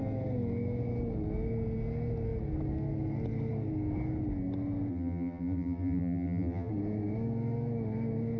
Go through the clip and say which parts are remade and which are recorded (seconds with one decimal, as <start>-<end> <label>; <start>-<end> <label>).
0.0-4.9 recorded; 4.9-6.7 remade; 6.7-8.4 recorded

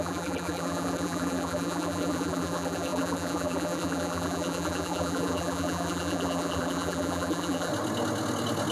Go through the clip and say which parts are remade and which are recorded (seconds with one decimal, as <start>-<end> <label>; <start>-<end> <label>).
0.0-7.7 remade; 7.7-8.7 recorded

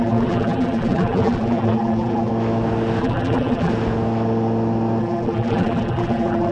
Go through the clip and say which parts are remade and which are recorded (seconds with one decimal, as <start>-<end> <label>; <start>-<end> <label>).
0.0-2.3 remade; 2.3-3.0 recorded; 3.0-3.7 remade; 3.7-5.0 recorded; 5.0-6.5 remade

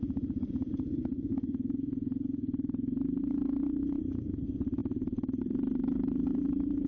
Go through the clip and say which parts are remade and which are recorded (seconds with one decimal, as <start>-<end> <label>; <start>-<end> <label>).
0.0-1.3 remade; 1.3-3.2 recorded; 3.2-6.9 remade